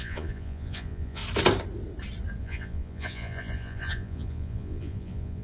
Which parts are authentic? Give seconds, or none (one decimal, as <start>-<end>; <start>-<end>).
1.2-2.4